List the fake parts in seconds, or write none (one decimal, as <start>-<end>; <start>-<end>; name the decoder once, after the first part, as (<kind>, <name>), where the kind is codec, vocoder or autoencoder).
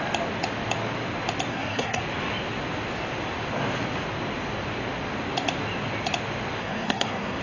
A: 1.5-2.0 (codec, SNAC); 6.6-7.4